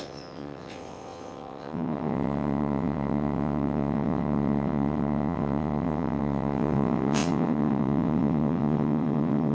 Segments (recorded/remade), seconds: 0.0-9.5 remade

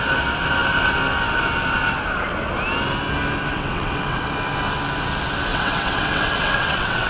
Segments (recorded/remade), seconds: 0.0-3.5 recorded; 3.5-4.2 remade; 4.2-5.5 recorded; 5.5-7.1 remade

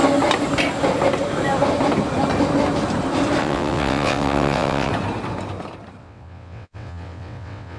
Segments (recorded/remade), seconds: 0.0-3.4 recorded; 3.4-4.9 remade; 4.9-6.0 recorded; 6.0-7.8 remade